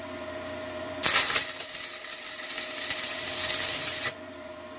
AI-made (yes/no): yes